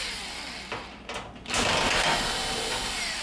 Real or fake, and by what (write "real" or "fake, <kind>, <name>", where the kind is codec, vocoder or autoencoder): real